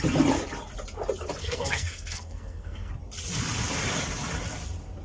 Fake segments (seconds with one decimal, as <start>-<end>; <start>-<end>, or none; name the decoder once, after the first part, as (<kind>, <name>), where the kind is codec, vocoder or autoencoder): 1.4-2.9 (codec, SNAC)